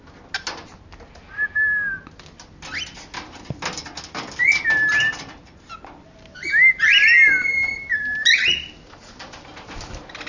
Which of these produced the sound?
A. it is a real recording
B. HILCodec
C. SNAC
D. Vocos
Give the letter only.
A